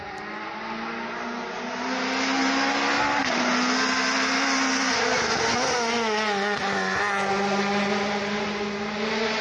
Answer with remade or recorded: recorded